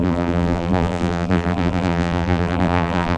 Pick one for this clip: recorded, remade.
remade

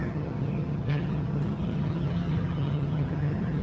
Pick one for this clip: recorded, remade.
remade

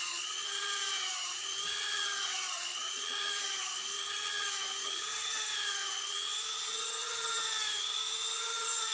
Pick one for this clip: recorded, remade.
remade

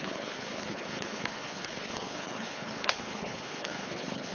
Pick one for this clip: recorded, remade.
remade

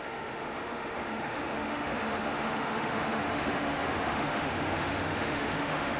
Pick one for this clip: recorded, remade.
remade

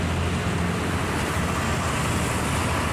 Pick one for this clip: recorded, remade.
recorded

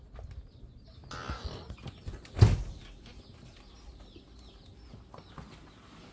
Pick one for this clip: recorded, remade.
recorded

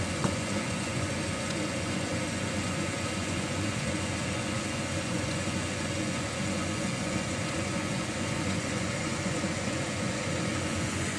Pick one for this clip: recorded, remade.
remade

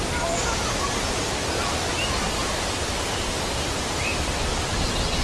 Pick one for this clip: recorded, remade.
recorded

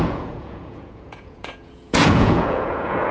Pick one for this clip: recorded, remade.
remade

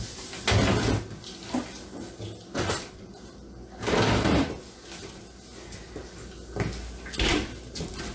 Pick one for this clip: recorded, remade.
recorded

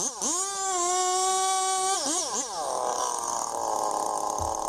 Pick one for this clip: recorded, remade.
recorded